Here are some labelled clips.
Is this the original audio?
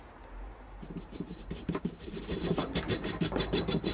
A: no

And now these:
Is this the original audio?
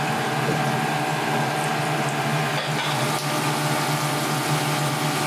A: yes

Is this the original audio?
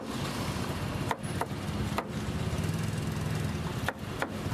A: yes